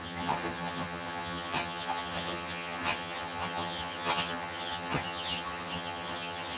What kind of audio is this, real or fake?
fake